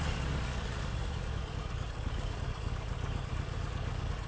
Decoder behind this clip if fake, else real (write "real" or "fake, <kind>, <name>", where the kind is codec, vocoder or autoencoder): fake, codec, DAC